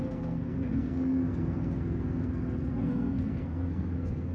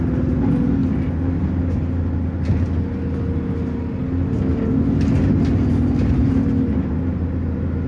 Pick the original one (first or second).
second